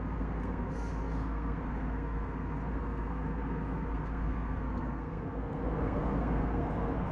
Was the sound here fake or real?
fake